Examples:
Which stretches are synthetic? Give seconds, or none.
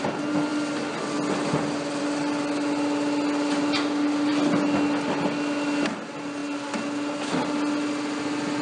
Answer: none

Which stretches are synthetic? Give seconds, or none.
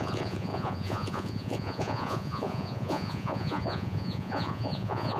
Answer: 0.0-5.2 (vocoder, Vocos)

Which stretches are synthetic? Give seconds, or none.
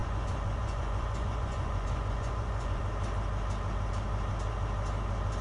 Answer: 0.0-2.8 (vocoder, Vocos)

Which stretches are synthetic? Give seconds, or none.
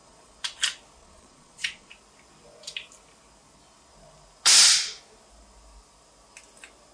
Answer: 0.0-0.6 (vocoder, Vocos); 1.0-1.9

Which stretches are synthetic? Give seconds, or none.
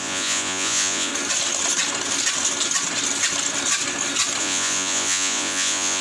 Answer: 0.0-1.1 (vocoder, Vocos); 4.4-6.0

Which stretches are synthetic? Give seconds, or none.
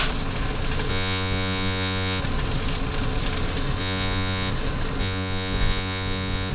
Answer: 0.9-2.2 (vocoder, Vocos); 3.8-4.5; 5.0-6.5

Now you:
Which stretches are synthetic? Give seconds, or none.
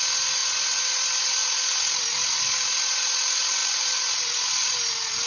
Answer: none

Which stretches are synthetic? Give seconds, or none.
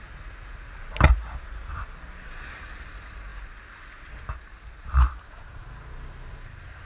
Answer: none